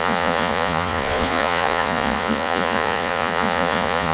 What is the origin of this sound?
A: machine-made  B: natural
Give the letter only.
A